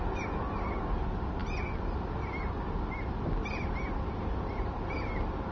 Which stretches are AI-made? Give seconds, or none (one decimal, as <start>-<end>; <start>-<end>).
none

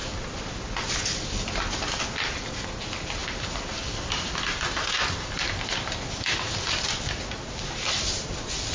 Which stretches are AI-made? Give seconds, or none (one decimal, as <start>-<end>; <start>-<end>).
none

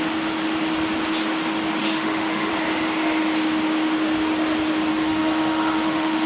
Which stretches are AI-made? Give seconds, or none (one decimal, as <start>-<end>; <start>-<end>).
1.8-2.5; 4.9-6.3

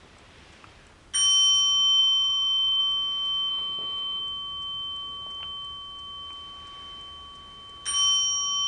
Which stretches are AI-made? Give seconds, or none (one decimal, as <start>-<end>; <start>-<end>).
2.0-2.8; 3.5-4.2

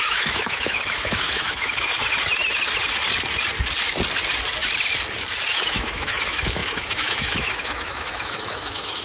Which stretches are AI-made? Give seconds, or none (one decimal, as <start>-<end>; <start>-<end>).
0.0-1.9; 5.5-9.0

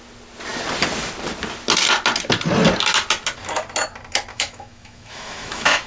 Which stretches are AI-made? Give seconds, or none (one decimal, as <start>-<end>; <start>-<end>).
4.3-5.9